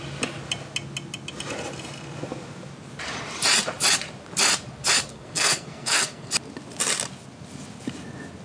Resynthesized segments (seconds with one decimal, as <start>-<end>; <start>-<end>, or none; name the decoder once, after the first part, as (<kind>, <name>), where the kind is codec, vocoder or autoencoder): 5.1-6.3 (codec, SNAC)